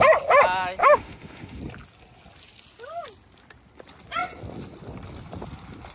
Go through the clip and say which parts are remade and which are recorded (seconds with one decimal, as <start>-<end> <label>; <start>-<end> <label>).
0.0-0.8 recorded; 0.8-1.6 remade; 1.6-5.9 recorded